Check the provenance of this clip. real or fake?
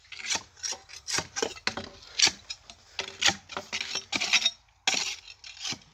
real